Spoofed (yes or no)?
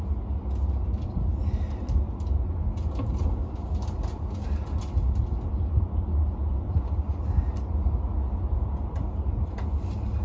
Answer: no